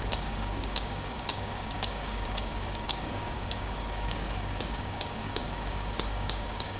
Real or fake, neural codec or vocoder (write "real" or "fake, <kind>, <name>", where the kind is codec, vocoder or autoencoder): fake, codec, DAC